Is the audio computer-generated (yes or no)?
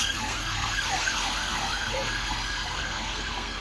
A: yes